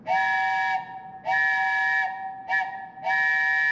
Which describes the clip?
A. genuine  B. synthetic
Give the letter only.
A